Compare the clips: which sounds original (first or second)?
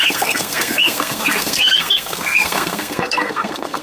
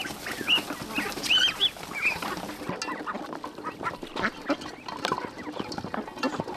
second